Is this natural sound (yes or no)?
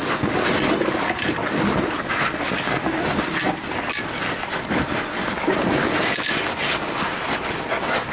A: yes